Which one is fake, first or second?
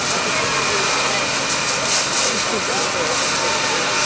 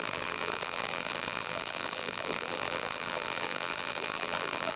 second